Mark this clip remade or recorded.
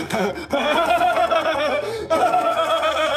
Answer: remade